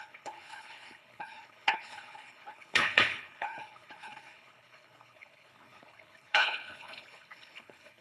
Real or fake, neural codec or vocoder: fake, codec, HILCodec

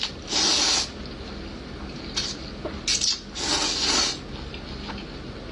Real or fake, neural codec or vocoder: real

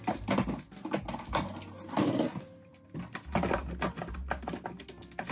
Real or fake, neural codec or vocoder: real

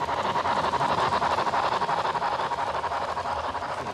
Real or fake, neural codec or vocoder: real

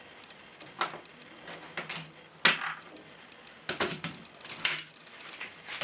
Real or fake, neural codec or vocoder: real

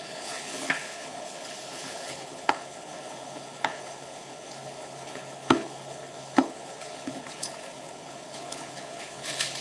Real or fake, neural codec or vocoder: fake, codec, HILCodec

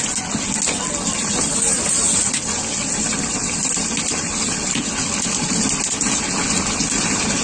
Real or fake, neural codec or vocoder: real